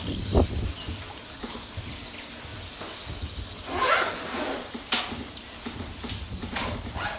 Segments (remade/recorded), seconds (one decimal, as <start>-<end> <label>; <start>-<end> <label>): 0.0-7.2 recorded

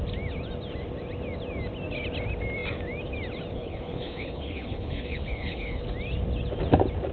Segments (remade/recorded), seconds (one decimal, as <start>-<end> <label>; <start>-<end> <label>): 0.0-3.5 recorded; 3.5-5.8 remade; 5.8-7.1 recorded

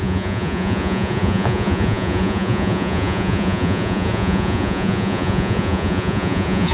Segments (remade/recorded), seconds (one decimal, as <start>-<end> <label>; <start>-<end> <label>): 0.0-6.7 remade

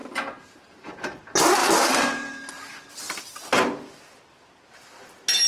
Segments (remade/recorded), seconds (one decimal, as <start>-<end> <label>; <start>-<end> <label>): 0.0-1.6 recorded; 1.6-3.0 remade; 3.0-5.5 recorded

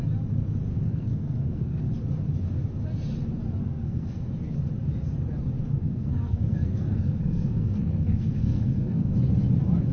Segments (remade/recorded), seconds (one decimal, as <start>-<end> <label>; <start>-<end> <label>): 0.0-0.7 recorded; 0.7-1.8 remade; 1.8-3.6 recorded; 3.6-4.3 remade; 4.3-5.7 recorded; 5.7-9.1 remade; 9.1-9.9 recorded